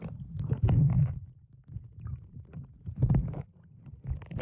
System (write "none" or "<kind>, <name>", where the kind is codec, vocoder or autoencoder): none